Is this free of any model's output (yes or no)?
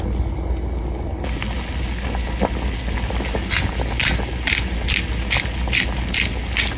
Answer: yes